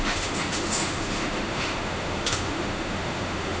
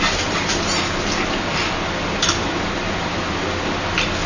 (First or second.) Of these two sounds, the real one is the second